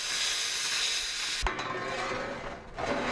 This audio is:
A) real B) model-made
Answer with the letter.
A